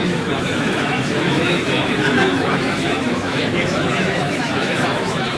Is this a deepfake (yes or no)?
yes